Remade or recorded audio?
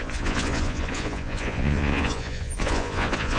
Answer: remade